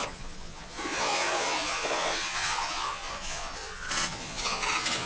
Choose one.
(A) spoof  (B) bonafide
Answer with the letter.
A